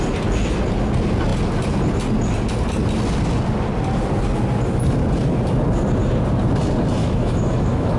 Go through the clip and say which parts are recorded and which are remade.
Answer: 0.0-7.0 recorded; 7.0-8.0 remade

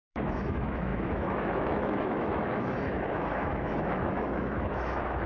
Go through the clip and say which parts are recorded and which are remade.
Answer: 0.0-5.3 remade

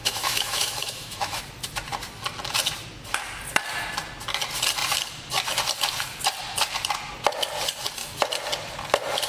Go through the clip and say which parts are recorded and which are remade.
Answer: 0.0-1.4 remade; 1.4-9.3 recorded